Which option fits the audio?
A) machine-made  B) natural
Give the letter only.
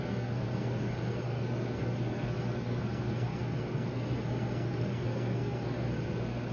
A